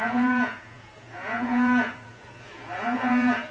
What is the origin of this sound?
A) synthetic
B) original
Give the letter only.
A